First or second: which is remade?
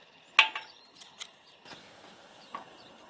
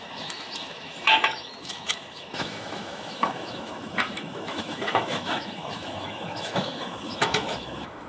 second